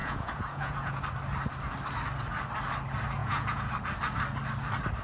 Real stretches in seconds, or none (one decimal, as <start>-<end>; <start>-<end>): 1.0-3.2; 3.7-5.0